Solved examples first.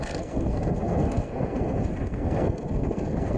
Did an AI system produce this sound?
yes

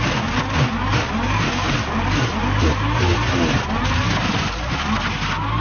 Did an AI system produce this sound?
no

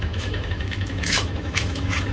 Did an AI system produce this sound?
yes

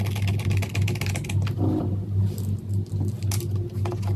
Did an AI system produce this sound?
no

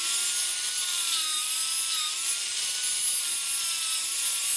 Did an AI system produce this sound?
no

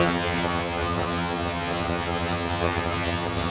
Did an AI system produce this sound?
yes